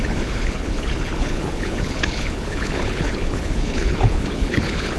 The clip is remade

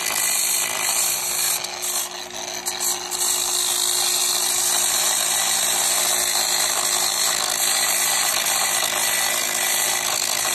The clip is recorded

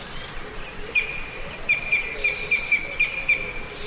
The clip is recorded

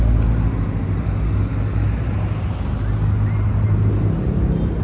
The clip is recorded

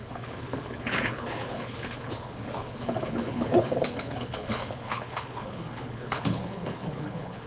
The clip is remade